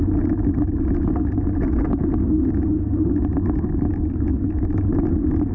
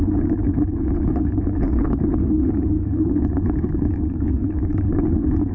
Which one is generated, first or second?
second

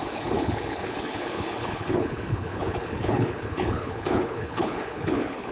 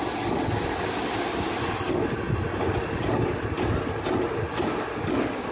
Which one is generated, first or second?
first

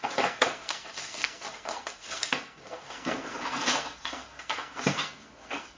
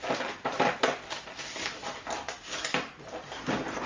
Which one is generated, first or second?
first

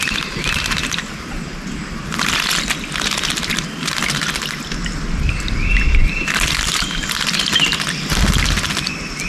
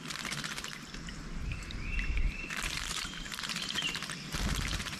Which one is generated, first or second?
second